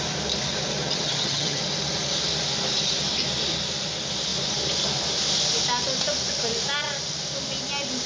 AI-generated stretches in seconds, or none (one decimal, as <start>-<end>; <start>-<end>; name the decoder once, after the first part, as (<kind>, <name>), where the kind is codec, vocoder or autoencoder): 0.8-1.6 (vocoder, HiFi-GAN)